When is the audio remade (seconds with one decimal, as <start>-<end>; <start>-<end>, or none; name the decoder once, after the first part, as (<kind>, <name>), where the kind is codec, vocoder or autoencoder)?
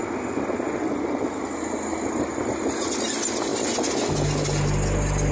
0.0-2.8 (vocoder, BigVGAN v2); 3.5-4.7